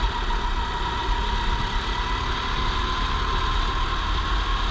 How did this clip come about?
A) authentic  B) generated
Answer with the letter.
A